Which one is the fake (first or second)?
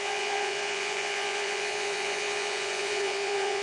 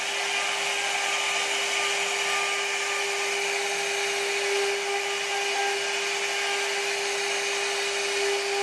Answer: first